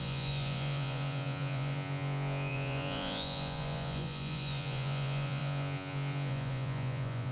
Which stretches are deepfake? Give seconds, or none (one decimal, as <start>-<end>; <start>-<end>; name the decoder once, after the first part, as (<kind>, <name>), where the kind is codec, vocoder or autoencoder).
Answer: 0.0-7.3 (vocoder, Vocos)